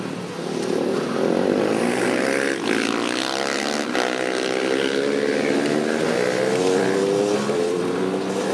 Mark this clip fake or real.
real